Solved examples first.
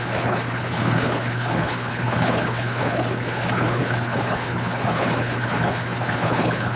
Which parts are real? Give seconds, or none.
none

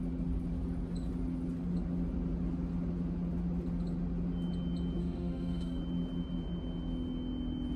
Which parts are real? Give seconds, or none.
0.0-5.0; 5.8-7.8

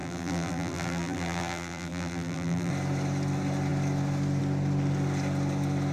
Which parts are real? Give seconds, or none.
2.7-5.9